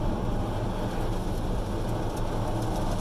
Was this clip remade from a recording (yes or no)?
no